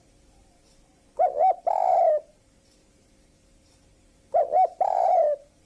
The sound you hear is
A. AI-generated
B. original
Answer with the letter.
A